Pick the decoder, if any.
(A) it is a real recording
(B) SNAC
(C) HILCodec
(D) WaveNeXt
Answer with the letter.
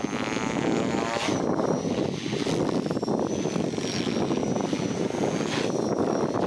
A